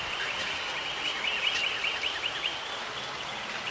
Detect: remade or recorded recorded